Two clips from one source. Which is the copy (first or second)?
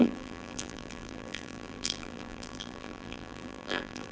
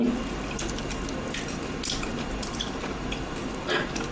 first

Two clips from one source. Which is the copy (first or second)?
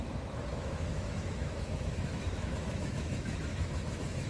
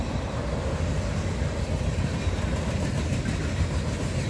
first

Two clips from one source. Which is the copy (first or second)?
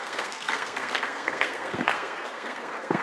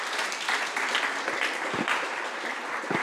first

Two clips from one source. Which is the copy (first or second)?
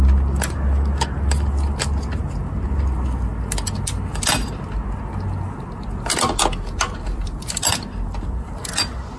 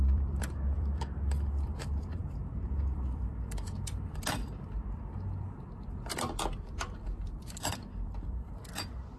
second